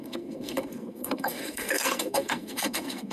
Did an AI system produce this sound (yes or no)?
yes